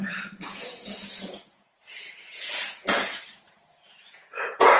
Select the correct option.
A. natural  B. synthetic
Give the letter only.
B